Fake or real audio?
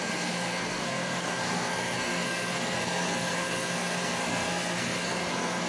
fake